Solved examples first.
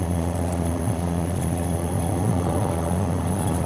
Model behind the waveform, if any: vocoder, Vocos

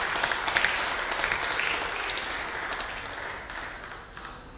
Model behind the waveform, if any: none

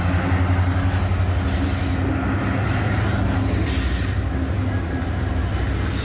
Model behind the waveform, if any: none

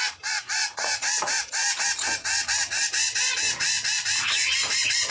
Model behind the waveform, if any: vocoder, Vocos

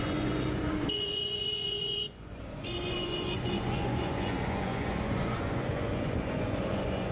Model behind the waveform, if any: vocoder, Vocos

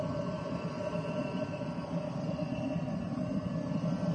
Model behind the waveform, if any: none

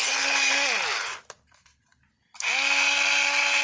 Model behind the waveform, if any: none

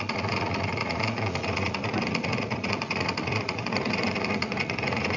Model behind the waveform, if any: vocoder, Vocos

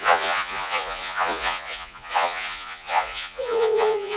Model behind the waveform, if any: vocoder, Vocos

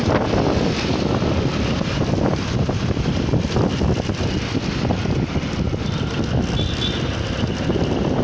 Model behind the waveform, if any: none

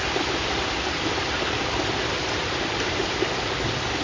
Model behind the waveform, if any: none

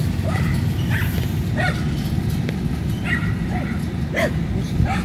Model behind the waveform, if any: none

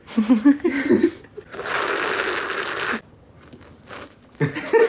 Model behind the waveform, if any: none